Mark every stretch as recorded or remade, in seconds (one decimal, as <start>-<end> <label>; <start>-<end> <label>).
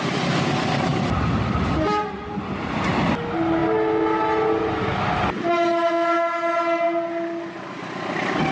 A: 0.0-8.5 recorded